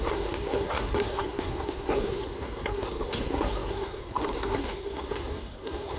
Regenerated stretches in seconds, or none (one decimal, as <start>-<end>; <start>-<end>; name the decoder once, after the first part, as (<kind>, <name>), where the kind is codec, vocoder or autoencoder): 0.0-6.0 (codec, SNAC)